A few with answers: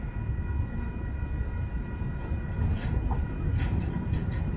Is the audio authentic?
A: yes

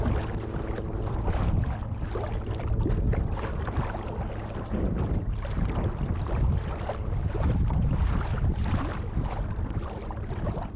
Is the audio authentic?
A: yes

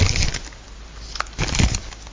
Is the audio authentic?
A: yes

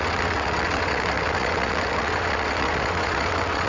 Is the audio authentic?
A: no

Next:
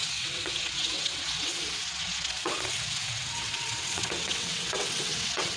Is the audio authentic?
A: no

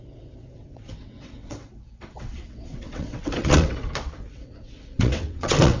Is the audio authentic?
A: no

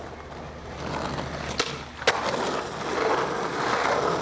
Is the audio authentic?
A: yes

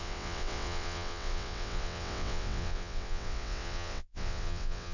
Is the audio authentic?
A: no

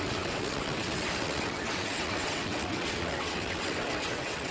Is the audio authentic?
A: no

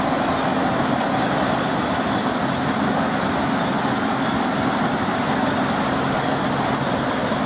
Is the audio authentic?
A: yes